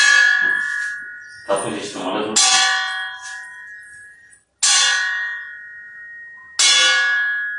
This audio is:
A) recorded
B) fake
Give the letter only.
A